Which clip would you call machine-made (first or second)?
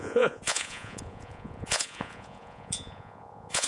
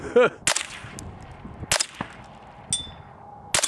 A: first